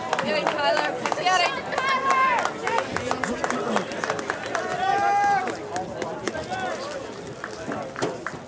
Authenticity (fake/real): real